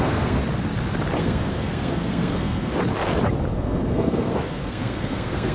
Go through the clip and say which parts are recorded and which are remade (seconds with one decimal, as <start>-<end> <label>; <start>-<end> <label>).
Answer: 0.0-0.4 remade; 0.4-1.2 recorded; 1.2-2.7 remade; 2.7-3.5 recorded; 3.5-5.5 remade